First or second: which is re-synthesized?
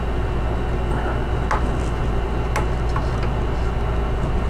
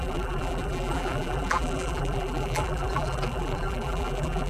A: second